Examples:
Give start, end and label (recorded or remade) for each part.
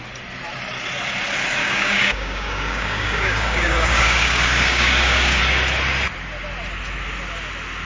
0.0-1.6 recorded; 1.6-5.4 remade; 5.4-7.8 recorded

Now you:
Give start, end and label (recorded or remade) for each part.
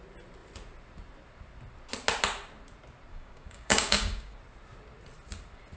0.0-3.1 recorded; 3.1-4.4 remade; 4.4-5.8 recorded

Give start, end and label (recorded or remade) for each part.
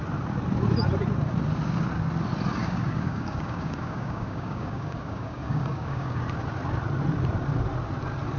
0.0-2.6 recorded; 2.6-6.2 remade; 6.2-8.4 recorded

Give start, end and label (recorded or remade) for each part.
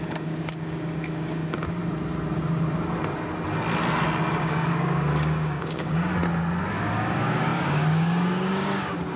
0.0-1.8 remade; 1.8-4.4 recorded; 4.4-6.1 remade; 6.1-6.7 recorded; 6.7-9.2 remade